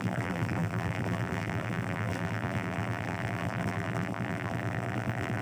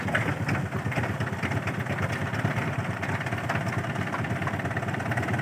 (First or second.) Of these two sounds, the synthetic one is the first